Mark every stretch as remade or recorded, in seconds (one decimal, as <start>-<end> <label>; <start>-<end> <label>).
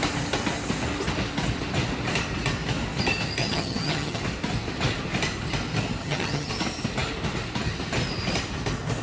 0.0-3.4 recorded; 3.4-4.2 remade; 4.2-6.0 recorded; 6.0-6.5 remade; 6.5-9.0 recorded